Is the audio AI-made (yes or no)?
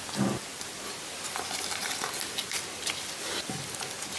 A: no